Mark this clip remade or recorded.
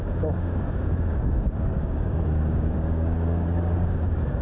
remade